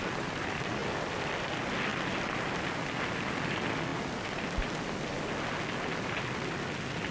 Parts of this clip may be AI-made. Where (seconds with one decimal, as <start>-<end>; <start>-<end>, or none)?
none